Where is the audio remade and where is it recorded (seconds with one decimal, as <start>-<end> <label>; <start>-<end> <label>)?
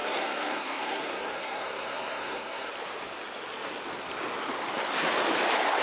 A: 0.0-2.7 remade; 2.7-5.8 recorded